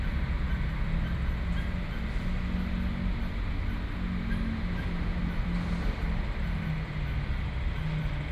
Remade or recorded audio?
recorded